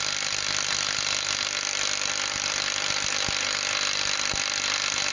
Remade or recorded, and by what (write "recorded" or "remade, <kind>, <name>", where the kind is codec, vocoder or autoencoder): recorded